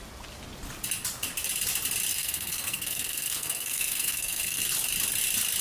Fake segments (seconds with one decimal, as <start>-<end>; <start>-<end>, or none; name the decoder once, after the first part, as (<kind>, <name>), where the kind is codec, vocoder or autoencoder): 2.1-4.6 (codec, SNAC)